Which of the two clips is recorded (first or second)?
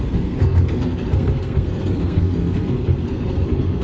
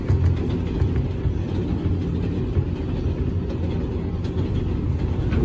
second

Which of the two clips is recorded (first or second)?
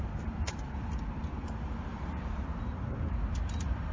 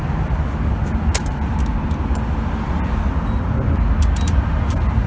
second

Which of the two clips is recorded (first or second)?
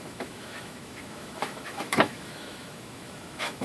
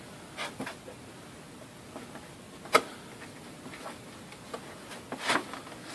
second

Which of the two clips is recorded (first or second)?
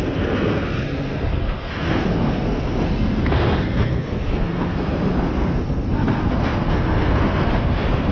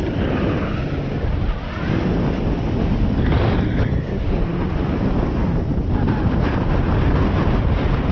second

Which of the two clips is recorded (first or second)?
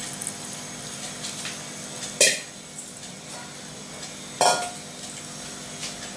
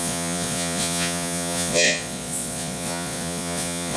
first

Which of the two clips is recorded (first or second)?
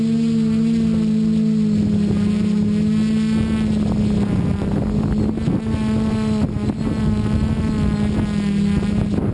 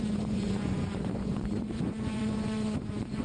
first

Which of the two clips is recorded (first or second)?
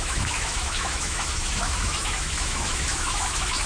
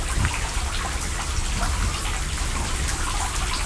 second